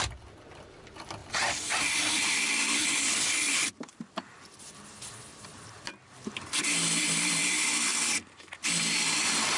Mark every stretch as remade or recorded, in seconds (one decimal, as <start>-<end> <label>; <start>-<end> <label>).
0.0-7.9 remade; 7.9-8.6 recorded; 8.6-9.6 remade